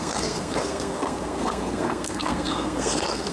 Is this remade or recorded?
remade